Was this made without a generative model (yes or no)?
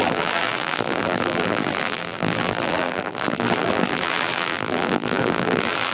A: no